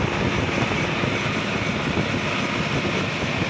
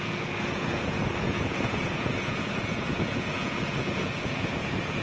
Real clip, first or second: first